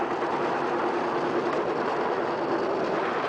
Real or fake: real